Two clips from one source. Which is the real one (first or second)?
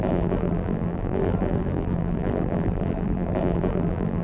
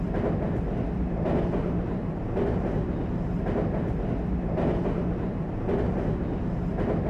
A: second